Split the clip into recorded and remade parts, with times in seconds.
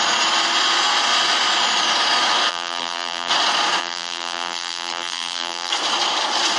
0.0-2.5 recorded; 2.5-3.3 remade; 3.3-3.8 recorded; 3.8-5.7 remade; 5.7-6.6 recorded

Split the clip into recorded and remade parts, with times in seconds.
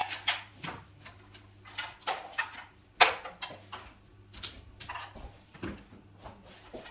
0.0-6.9 recorded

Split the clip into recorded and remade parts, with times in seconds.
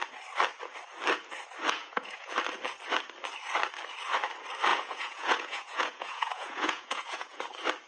0.0-1.8 recorded; 1.8-2.3 remade; 2.3-4.7 recorded; 4.7-7.4 remade; 7.4-7.9 recorded